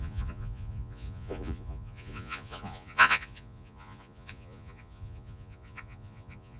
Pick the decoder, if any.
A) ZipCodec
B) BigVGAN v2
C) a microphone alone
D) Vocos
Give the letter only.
D